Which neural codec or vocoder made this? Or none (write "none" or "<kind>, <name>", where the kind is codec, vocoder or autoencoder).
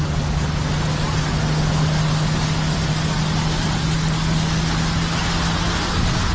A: none